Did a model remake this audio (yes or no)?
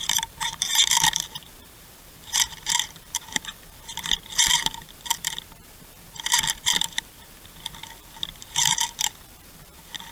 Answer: yes